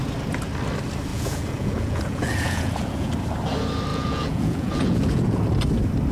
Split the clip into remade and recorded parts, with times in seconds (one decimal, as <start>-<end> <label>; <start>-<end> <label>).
0.0-1.1 recorded; 1.1-3.1 remade; 3.1-3.9 recorded; 3.9-5.4 remade; 5.4-6.1 recorded

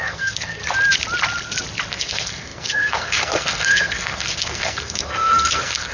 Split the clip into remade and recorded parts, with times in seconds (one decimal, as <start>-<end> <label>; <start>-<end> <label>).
0.0-0.6 remade; 0.6-1.9 recorded; 1.9-5.9 remade

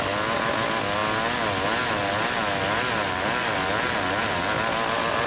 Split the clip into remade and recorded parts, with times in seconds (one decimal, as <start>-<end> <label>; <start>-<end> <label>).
0.0-5.3 recorded

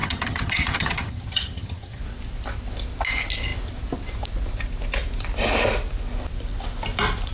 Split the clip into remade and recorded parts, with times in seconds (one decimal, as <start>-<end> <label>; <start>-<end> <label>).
0.0-2.0 remade; 2.0-7.3 recorded

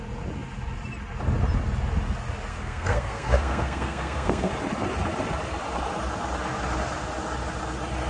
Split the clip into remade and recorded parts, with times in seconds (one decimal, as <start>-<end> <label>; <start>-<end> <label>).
0.0-2.5 recorded; 2.5-4.5 remade; 4.5-8.1 recorded